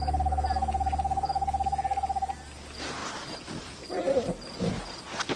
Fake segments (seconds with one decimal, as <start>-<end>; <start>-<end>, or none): none